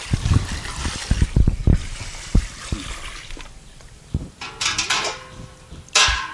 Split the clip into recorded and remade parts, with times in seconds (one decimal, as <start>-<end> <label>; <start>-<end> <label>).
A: 0.0-6.3 recorded